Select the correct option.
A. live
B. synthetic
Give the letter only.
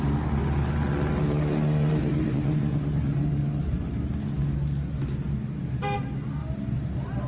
A